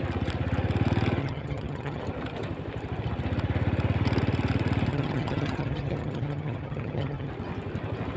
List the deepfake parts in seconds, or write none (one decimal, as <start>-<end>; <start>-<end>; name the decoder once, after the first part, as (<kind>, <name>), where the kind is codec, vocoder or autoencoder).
1.2-2.0 (vocoder, HiFi-GAN); 4.9-7.3